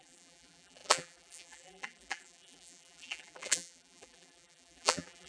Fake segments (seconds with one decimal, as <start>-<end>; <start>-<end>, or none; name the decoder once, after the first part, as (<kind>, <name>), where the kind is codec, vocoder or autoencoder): 0.0-5.3 (vocoder, BigVGAN v2)